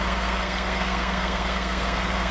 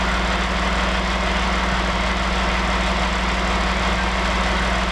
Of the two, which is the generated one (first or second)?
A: first